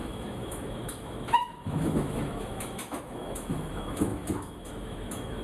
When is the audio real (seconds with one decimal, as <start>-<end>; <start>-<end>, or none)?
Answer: none